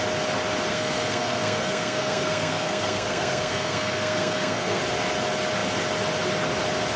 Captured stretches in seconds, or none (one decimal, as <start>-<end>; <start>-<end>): 0.0-0.7; 4.8-7.0